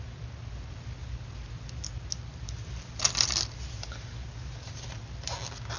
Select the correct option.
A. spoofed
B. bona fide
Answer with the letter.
B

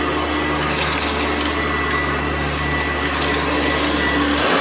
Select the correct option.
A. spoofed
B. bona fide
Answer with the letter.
B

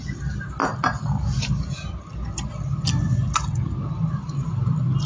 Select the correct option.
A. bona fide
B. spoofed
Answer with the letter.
A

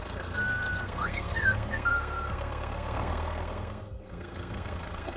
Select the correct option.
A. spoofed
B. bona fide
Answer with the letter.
A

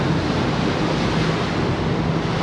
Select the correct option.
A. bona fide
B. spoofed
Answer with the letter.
A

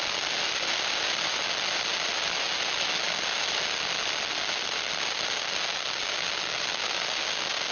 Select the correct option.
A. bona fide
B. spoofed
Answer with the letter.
A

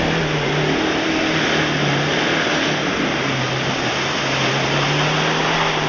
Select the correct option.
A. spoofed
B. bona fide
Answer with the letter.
B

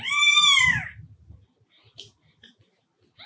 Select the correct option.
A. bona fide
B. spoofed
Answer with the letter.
B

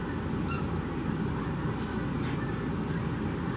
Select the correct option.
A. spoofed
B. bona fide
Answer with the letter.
B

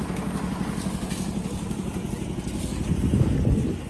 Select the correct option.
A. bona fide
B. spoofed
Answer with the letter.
A